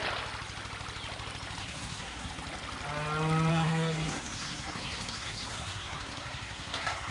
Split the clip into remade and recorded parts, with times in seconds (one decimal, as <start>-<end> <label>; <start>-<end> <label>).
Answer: 0.0-1.6 recorded; 1.6-2.3 remade; 2.3-3.5 recorded; 3.5-7.1 remade